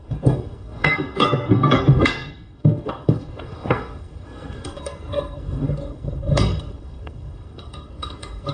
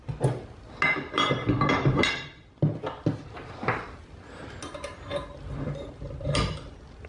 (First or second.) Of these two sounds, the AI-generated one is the first